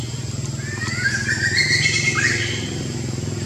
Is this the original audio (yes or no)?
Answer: yes